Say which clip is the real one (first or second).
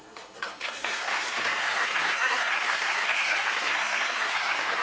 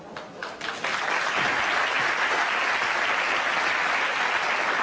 second